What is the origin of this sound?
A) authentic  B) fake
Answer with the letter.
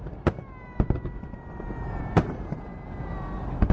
B